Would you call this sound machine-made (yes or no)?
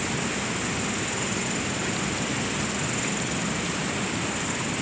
no